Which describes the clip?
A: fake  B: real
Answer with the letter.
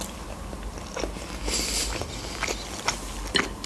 B